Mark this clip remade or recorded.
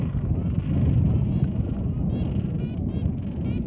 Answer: recorded